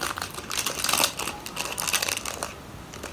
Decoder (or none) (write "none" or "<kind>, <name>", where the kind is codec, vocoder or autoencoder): none